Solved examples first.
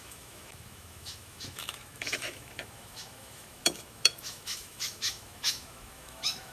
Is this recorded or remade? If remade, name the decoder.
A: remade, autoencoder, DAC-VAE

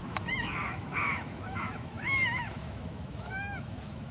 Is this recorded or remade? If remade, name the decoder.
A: remade, autoencoder, DAC-VAE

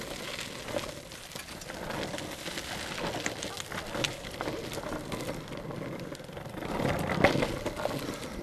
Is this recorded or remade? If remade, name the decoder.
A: recorded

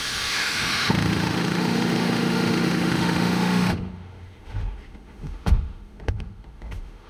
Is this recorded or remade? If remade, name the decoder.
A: remade, autoencoder, DAC-VAE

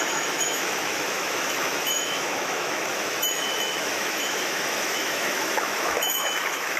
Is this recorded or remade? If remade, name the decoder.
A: remade, autoencoder, DAC-VAE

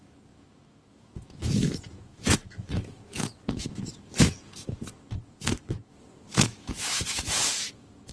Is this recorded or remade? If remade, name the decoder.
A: remade, autoencoder, DAC-VAE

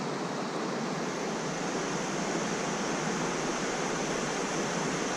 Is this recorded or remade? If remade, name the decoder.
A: recorded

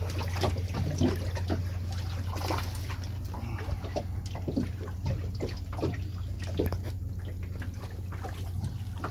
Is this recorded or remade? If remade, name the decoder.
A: recorded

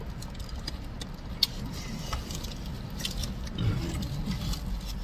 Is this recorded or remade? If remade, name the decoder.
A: recorded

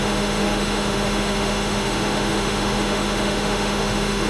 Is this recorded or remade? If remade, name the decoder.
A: remade, autoencoder, DAC-VAE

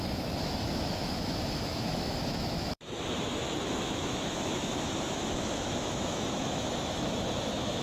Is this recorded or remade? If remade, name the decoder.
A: remade, autoencoder, DAC-VAE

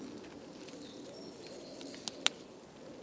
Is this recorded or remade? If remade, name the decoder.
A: recorded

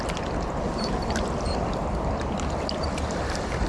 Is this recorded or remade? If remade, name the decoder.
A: recorded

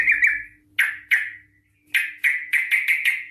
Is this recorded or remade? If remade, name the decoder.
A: recorded